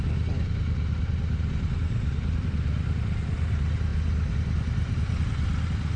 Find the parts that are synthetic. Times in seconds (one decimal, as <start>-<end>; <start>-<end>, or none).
none